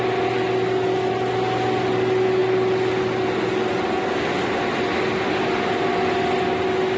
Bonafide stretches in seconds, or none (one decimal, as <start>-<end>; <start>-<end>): 0.0-7.0